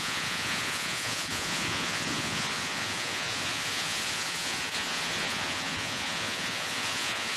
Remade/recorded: remade